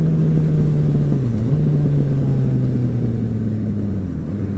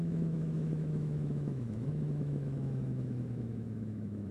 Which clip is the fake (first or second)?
second